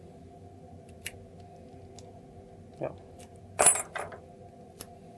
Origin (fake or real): real